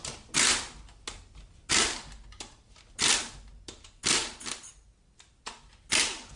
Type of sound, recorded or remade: recorded